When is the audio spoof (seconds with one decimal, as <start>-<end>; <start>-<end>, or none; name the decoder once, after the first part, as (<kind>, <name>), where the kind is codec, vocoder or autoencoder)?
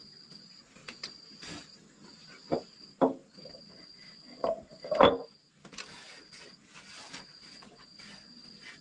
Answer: none